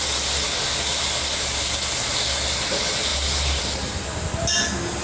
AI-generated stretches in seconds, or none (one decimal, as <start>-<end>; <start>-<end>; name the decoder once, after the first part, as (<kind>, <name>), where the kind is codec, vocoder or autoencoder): none